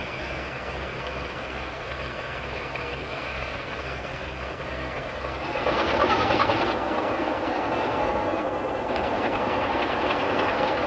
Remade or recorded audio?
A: remade